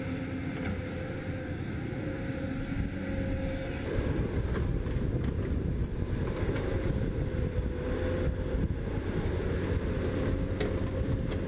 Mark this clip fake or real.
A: real